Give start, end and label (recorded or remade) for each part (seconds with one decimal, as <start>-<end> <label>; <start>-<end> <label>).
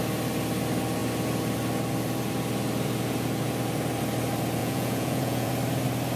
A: 0.0-4.6 recorded; 4.6-5.5 remade; 5.5-6.2 recorded